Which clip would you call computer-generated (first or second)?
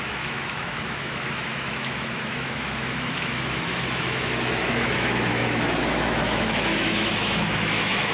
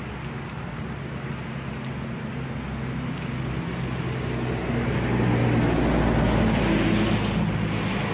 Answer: first